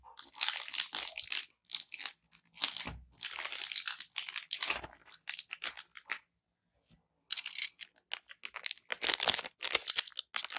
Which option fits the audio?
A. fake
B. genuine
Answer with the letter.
B